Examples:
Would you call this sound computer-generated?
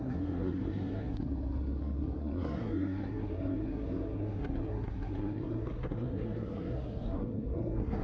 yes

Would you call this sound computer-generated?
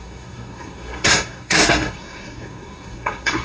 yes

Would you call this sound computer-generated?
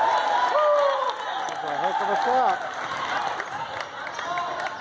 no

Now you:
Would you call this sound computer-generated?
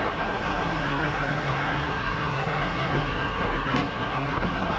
yes